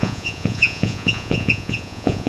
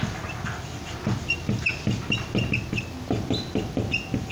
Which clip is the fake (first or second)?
first